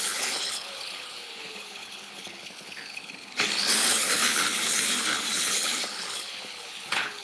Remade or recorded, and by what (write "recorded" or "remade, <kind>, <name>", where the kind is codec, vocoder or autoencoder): remade, codec, HILCodec